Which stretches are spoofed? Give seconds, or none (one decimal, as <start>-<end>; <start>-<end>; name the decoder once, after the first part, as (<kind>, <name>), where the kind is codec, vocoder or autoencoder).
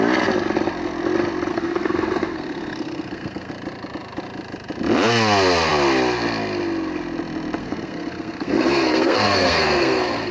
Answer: 1.5-3.5 (codec, SNAC); 7.6-10.3